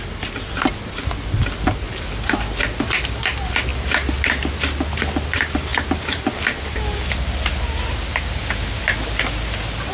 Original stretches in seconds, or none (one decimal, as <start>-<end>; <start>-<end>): 0.0-9.9